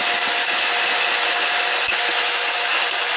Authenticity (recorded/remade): recorded